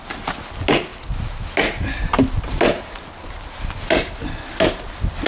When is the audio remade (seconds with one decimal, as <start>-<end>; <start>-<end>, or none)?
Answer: none